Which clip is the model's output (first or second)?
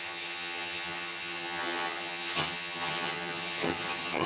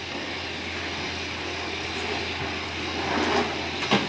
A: first